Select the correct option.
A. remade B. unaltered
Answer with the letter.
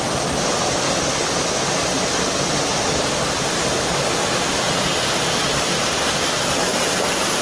B